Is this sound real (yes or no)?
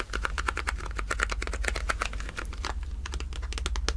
yes